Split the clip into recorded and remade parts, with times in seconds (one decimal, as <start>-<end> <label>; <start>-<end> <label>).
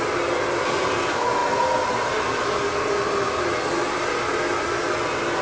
0.0-5.4 recorded